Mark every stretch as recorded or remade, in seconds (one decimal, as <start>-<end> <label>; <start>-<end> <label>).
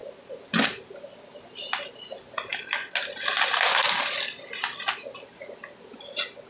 0.0-6.5 recorded